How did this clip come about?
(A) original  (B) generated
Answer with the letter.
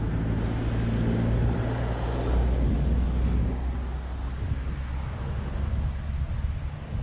A